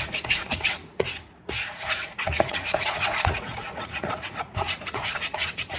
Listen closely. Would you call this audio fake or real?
fake